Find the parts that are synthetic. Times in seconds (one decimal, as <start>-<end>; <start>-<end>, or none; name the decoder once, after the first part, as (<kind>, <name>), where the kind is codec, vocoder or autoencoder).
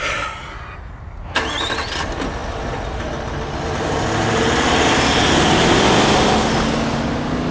none